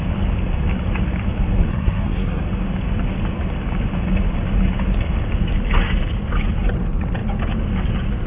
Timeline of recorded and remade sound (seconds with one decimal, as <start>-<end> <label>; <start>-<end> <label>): 0.0-1.7 recorded; 1.7-2.4 remade; 2.4-8.3 recorded